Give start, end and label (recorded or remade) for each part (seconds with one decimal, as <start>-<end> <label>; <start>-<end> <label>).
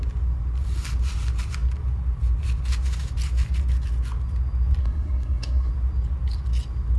0.0-4.8 recorded; 4.8-5.7 remade; 5.7-7.0 recorded